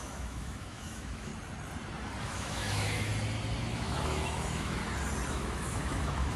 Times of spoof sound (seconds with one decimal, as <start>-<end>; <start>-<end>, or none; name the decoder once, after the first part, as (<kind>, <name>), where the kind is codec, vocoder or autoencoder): 0.0-1.3 (autoencoder, DAC-VAE); 2.2-3.1; 3.6-4.8; 5.3-6.4